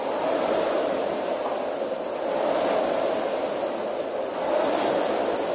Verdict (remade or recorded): recorded